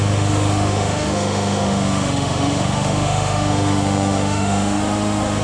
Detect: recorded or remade remade